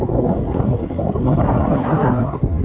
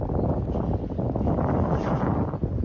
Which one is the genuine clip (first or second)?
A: second